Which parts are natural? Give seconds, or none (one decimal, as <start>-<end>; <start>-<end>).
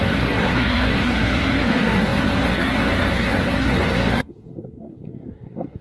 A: none